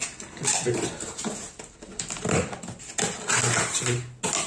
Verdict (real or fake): real